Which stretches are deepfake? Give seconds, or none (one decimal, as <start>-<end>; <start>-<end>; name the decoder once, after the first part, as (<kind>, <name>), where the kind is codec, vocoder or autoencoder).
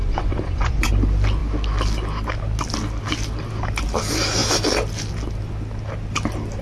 0.0-0.9 (vocoder, Vocos)